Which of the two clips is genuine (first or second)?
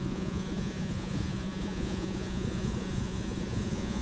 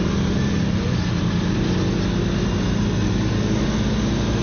second